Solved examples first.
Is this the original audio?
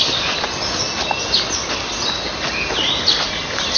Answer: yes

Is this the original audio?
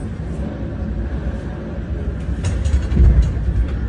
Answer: yes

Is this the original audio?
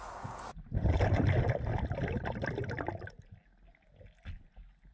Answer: yes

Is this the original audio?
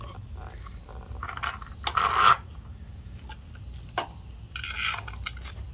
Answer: yes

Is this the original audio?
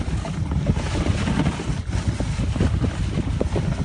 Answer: yes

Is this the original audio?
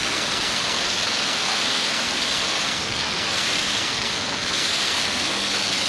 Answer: no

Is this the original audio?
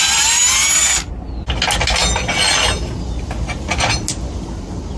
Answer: yes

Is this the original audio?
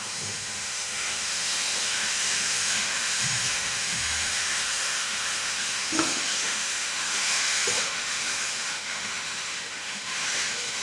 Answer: no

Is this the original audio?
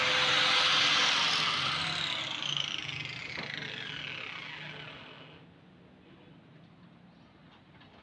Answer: yes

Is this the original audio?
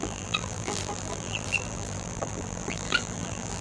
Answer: no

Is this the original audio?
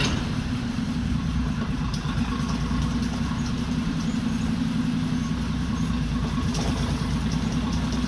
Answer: no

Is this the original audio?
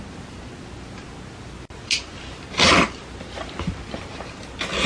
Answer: yes